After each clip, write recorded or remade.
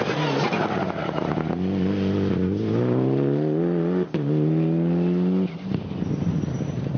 recorded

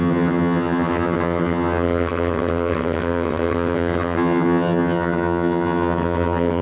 remade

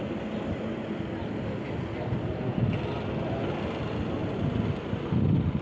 recorded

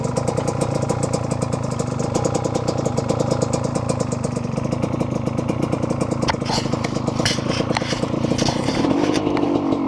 recorded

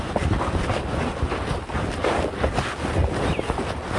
recorded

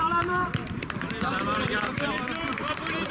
remade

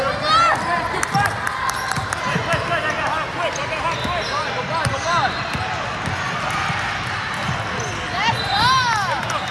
recorded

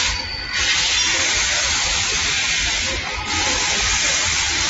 recorded